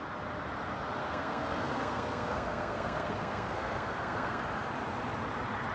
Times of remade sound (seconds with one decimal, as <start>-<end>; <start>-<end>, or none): 1.0-4.4